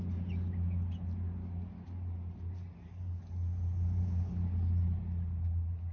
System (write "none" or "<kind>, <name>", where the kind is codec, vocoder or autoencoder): none